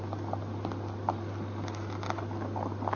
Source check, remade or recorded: recorded